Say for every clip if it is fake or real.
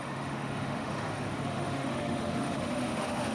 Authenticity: fake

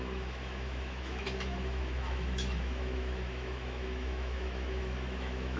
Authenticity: fake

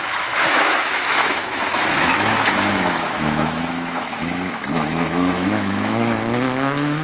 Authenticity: fake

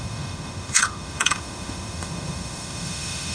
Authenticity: fake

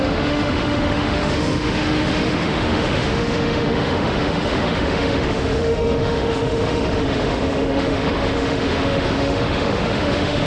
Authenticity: fake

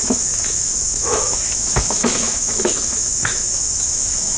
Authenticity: fake